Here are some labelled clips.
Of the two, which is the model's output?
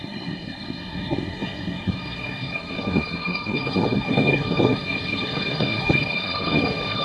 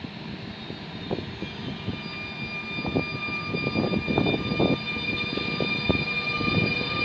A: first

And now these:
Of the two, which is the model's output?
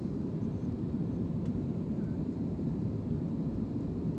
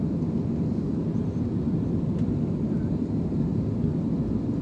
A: first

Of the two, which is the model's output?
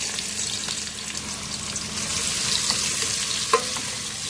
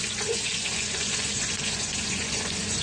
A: second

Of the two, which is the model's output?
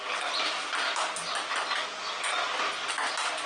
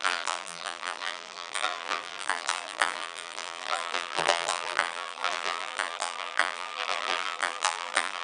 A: second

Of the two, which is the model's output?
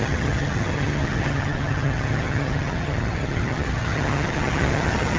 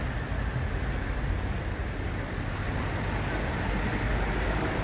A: first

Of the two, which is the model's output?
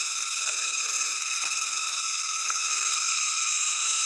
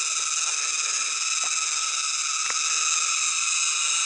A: first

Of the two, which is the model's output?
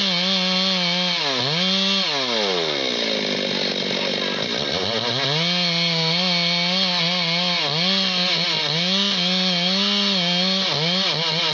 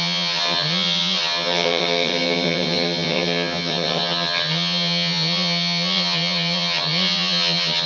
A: second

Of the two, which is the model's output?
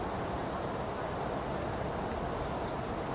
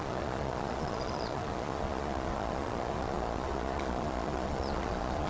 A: second